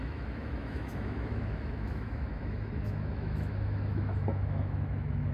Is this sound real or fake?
fake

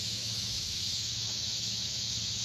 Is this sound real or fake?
fake